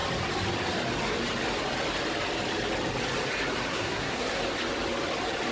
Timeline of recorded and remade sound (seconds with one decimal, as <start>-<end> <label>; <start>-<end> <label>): 0.0-3.7 recorded; 3.7-4.4 remade; 4.4-5.5 recorded